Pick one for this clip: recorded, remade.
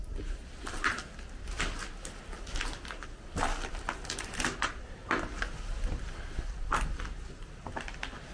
recorded